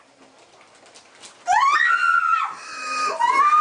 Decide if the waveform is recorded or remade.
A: recorded